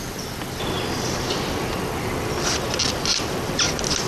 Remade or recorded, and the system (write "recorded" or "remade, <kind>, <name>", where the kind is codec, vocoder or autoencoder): recorded